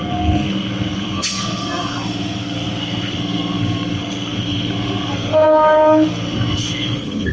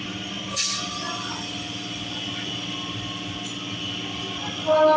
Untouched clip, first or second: second